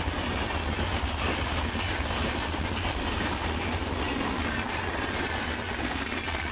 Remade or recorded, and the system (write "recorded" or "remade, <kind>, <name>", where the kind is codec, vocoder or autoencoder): recorded